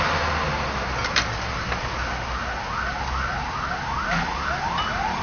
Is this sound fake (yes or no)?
no